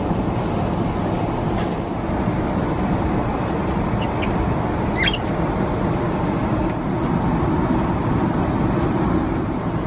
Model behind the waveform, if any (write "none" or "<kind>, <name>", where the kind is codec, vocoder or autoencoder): none